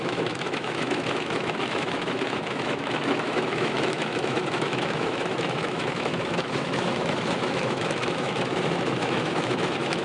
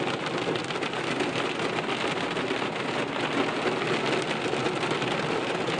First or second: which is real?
second